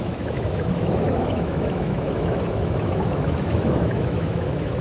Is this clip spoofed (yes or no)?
yes